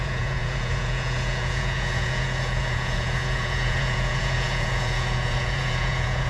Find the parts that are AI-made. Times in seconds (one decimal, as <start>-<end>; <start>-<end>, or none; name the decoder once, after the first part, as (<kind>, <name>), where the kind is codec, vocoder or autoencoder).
0.0-6.3 (vocoder, Vocos)